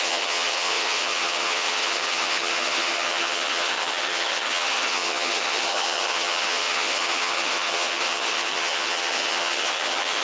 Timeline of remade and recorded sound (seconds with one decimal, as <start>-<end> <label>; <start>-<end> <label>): 0.0-10.2 remade